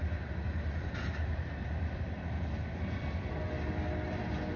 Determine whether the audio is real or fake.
real